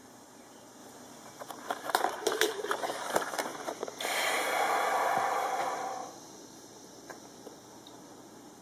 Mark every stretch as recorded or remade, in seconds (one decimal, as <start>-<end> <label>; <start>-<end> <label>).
0.0-0.8 remade; 0.8-1.9 recorded; 1.9-7.1 remade; 7.1-7.7 recorded; 7.7-8.6 remade